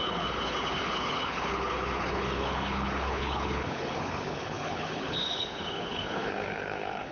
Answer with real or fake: fake